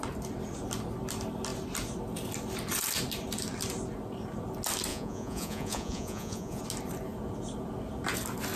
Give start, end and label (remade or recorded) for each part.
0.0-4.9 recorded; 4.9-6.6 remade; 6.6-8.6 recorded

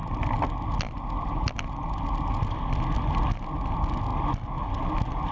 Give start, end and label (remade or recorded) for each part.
0.0-5.3 recorded

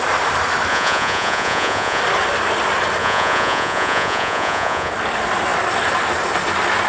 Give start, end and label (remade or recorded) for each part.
0.0-0.7 recorded; 0.7-2.0 remade; 2.0-3.0 recorded; 3.0-4.9 remade; 4.9-6.9 recorded

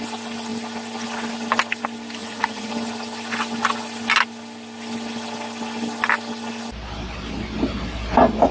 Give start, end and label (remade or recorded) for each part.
0.0-2.2 recorded; 2.2-2.7 remade; 2.7-8.5 recorded

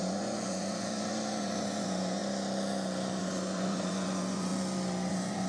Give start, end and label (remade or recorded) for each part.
0.0-2.2 remade; 2.2-3.2 recorded; 3.2-4.5 remade; 4.5-5.1 recorded; 5.1-5.5 remade

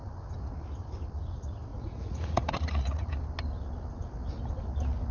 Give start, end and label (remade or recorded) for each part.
0.0-1.7 recorded; 1.7-3.1 remade; 3.1-5.1 recorded

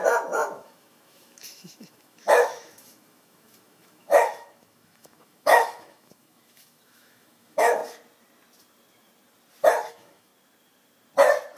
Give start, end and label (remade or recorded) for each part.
0.0-7.8 remade; 7.8-9.9 recorded; 9.9-10.3 remade; 10.3-11.6 recorded

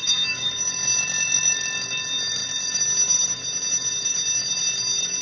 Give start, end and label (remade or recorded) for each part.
0.0-0.5 remade; 0.5-5.2 recorded